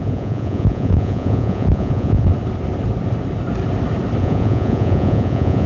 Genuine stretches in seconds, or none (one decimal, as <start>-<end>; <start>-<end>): 2.3-4.2